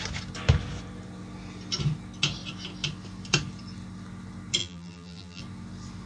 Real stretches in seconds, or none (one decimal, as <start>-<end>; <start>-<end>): 0.0-4.6; 5.4-6.1